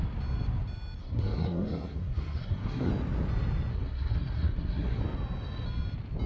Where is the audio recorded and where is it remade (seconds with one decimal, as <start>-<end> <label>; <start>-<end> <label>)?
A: 0.0-1.0 recorded; 1.0-2.9 remade; 2.9-3.7 recorded; 3.7-5.0 remade; 5.0-6.3 recorded